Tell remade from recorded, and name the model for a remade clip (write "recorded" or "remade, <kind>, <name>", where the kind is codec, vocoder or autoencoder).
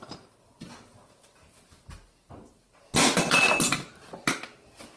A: recorded